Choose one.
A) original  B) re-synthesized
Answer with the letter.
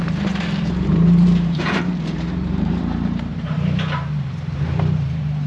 B